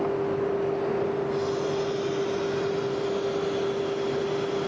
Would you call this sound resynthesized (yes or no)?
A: no